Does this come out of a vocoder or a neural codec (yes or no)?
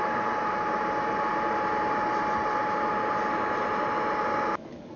no